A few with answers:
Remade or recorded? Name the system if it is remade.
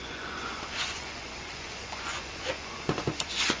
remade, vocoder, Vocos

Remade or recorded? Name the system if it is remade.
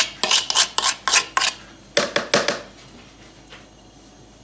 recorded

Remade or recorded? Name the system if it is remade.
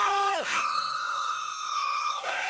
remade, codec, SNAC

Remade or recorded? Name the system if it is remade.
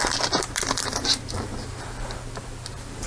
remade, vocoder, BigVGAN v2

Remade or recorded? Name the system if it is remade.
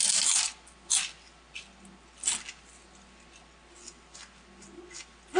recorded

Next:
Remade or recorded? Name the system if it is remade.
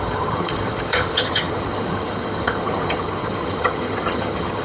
remade, vocoder, HiFi-GAN